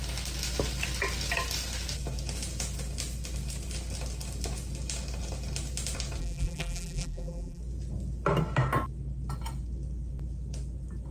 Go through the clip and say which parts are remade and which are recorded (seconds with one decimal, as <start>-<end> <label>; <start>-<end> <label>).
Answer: 0.0-6.2 recorded; 6.2-7.6 remade; 7.6-11.1 recorded